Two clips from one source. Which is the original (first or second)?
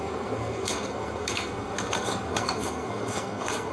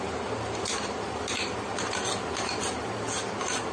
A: second